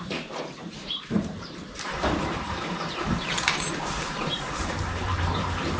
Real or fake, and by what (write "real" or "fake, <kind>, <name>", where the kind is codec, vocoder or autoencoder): fake, vocoder, BigVGAN v2